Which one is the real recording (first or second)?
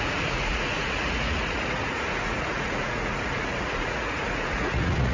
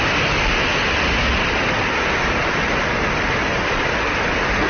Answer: second